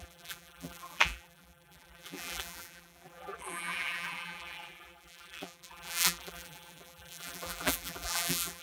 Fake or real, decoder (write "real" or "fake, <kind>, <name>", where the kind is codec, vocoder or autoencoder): fake, vocoder, BigVGAN v2